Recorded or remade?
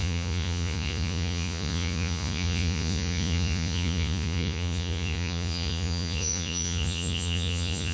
remade